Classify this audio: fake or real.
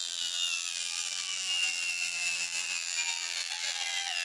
fake